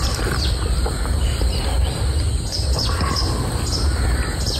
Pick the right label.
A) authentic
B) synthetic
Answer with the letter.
A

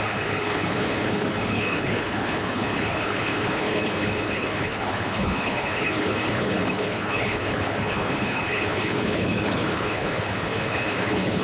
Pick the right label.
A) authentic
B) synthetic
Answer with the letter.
B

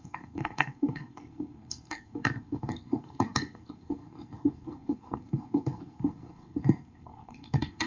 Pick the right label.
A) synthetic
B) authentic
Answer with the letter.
A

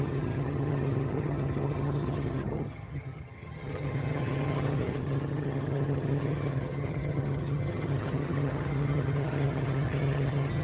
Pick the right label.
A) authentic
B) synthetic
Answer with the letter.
B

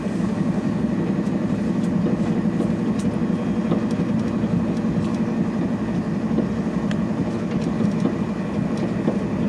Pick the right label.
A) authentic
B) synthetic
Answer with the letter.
A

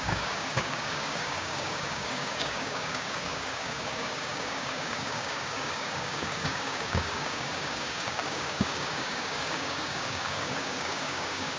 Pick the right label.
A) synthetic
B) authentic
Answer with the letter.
A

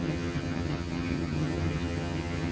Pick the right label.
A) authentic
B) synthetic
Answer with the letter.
B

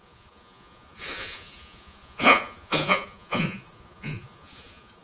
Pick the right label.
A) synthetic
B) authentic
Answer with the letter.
A